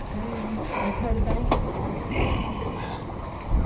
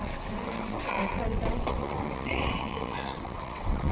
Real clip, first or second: first